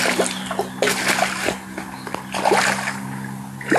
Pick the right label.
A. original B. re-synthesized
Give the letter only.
A